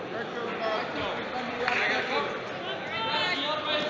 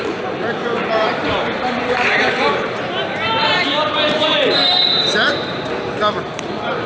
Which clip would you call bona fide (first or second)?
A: first